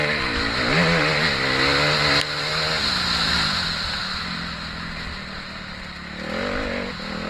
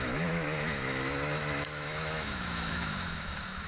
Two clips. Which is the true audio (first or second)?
first